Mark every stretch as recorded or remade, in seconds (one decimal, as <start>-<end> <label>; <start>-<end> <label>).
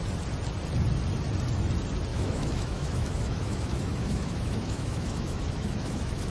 0.0-2.1 recorded; 2.1-6.3 remade